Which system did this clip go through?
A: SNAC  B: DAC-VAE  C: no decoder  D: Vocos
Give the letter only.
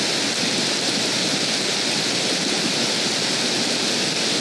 C